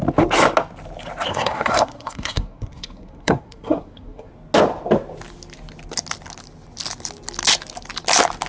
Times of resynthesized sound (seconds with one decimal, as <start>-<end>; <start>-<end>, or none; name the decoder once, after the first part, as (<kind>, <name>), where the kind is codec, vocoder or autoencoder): 1.3-4.3 (codec, SNAC)